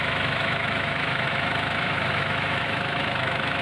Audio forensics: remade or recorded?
remade